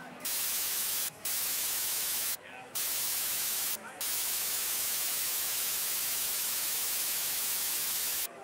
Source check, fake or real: fake